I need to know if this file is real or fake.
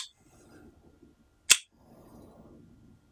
real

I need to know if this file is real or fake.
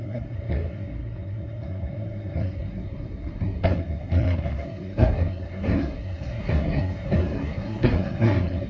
fake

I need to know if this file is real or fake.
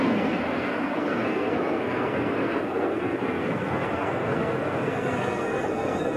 fake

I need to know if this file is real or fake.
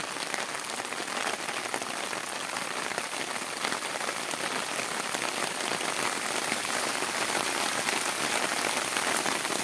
real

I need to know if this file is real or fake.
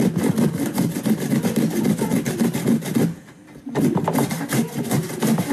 real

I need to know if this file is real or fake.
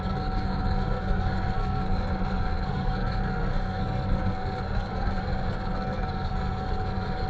fake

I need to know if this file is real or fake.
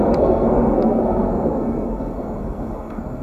fake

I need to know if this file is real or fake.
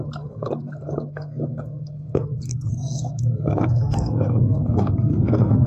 fake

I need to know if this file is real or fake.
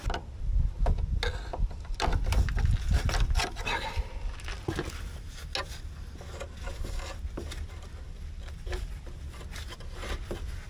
real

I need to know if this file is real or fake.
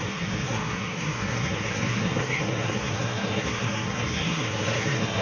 fake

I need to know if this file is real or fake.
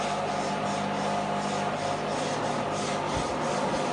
real